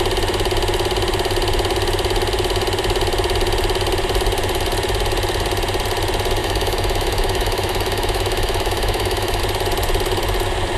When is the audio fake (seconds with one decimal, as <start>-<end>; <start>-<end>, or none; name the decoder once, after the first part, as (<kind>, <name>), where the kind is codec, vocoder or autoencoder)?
6.4-9.4 (autoencoder, DAC-VAE)